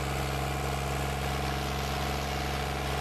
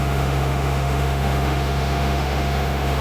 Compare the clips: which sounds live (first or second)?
first